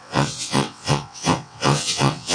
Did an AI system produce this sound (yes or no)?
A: yes